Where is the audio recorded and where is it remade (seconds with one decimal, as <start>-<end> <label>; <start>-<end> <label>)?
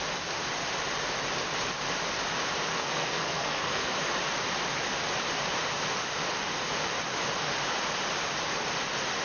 0.0-2.7 recorded; 2.7-3.9 remade; 3.9-9.2 recorded